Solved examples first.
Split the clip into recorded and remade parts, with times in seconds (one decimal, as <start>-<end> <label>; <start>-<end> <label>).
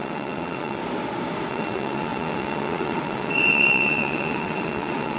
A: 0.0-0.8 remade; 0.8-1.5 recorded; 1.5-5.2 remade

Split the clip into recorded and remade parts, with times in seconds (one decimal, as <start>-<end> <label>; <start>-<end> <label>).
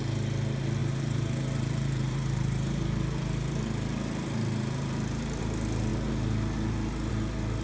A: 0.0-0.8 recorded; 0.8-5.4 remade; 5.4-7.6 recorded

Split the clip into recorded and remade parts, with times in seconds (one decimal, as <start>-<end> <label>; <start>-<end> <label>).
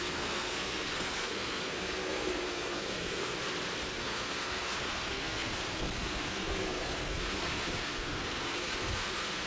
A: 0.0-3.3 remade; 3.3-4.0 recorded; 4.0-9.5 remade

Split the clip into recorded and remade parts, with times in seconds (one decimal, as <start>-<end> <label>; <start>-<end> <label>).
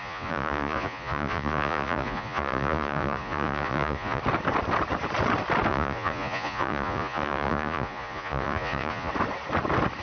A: 0.0-4.2 remade; 4.2-5.7 recorded; 5.7-9.1 remade; 9.1-10.0 recorded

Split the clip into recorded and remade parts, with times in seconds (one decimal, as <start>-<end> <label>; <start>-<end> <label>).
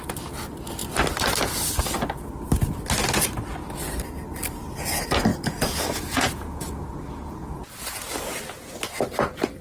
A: 0.0-5.3 recorded; 5.3-8.1 remade; 8.1-9.6 recorded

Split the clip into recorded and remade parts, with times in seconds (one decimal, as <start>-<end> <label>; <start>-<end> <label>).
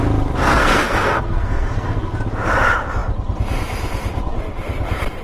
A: 0.0-0.4 recorded; 0.4-2.1 remade; 2.1-5.2 recorded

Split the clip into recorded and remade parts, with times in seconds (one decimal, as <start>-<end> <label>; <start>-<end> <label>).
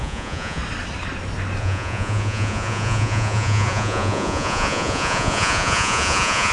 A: 0.0-0.6 remade; 0.6-1.6 recorded; 1.6-6.5 remade